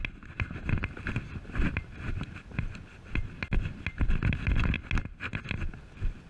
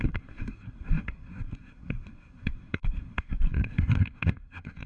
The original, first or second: first